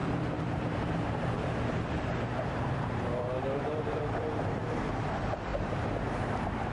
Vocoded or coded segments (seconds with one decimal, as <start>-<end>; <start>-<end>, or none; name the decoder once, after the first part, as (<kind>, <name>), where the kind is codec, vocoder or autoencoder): 0.0-5.5 (vocoder, BigVGAN v2); 6.2-6.7